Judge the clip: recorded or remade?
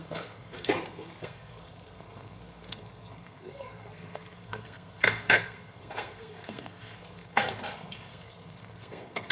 remade